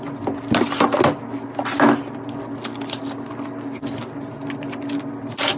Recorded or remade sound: recorded